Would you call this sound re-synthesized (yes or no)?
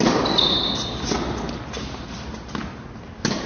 no